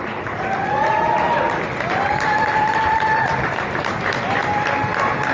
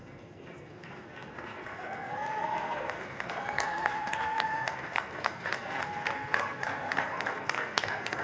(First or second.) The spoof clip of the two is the second